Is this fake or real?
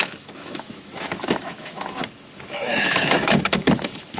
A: fake